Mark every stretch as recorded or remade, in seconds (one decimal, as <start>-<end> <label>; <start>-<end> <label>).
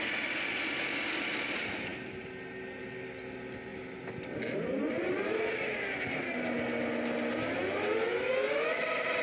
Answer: 0.0-9.2 recorded